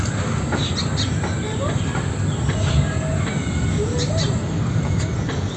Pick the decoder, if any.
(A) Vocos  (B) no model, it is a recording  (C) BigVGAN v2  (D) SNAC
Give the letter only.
B